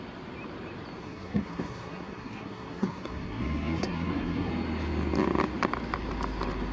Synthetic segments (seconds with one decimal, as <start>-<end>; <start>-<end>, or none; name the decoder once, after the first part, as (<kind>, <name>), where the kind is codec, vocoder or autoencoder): 1.0-4.5 (codec, SNAC)